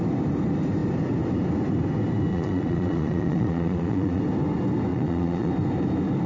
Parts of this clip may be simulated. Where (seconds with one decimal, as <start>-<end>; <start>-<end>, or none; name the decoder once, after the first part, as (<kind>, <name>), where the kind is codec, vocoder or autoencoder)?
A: 2.3-4.2 (vocoder, Vocos); 4.9-5.5